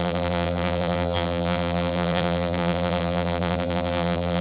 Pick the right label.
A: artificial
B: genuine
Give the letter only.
A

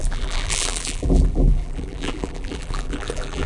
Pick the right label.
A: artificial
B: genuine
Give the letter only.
A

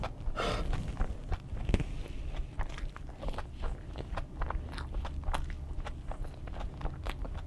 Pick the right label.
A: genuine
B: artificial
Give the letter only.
A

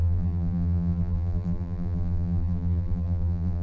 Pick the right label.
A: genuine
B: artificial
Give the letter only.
B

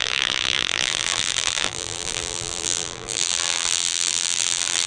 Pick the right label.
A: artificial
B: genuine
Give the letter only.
A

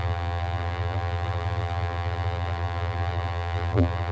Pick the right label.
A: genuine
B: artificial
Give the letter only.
B